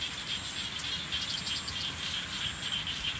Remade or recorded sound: recorded